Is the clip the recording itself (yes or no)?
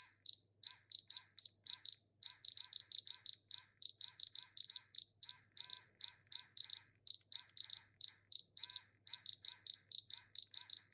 yes